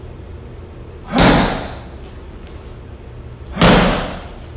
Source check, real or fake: real